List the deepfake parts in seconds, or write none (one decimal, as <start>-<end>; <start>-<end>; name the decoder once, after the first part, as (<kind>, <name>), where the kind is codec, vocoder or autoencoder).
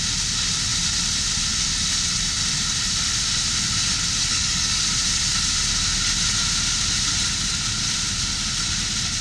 4.3-4.8 (codec, DAC)